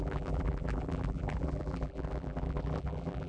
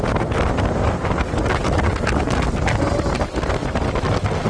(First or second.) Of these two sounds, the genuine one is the second